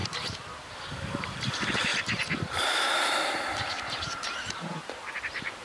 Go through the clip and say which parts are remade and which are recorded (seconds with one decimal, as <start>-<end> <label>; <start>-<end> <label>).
0.0-0.9 recorded; 0.9-5.6 remade